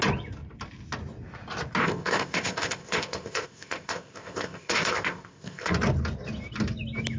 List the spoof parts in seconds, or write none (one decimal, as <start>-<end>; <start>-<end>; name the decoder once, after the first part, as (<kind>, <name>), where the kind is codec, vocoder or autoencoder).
1.8-5.7 (codec, ZipCodec)